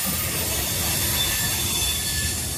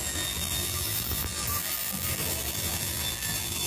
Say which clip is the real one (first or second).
first